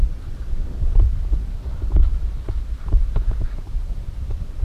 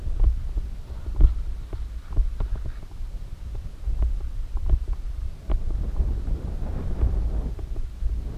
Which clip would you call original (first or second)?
second